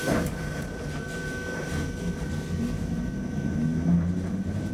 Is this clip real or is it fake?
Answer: real